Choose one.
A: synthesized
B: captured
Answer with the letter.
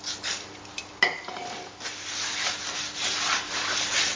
B